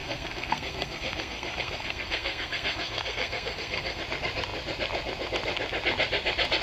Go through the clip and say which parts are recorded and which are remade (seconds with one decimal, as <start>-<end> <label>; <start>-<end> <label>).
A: 0.0-4.0 remade; 4.0-6.6 recorded